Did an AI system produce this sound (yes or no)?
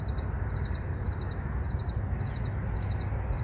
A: no